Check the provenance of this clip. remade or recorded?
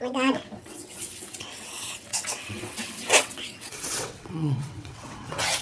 remade